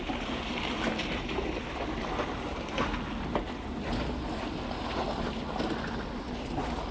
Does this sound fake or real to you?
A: real